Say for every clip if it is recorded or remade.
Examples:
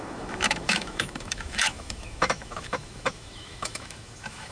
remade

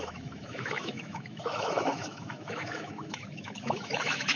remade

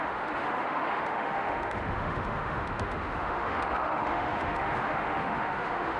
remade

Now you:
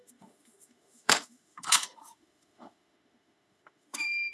remade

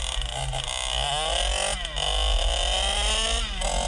recorded